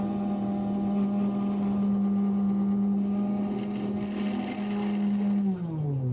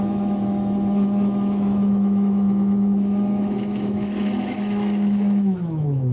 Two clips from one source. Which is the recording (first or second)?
first